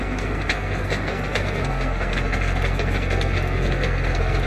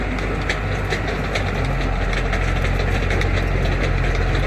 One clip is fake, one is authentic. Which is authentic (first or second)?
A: second